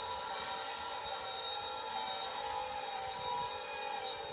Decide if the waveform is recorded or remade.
recorded